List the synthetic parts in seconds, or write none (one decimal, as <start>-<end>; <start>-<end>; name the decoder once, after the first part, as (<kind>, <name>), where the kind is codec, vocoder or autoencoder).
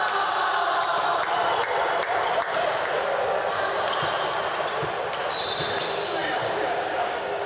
6.2-7.5 (codec, DAC)